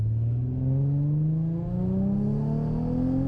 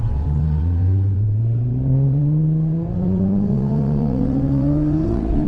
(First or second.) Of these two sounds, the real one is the first